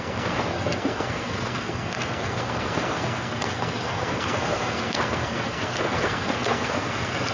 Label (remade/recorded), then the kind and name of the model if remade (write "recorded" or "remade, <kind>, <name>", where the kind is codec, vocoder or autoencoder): remade, codec, SNAC